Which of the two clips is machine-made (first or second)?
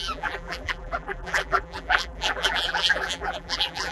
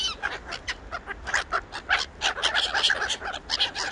first